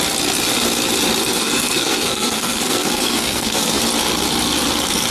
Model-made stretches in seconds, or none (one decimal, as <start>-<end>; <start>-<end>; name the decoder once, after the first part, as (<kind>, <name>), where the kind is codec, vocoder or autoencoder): 1.2-3.8 (codec, SNAC)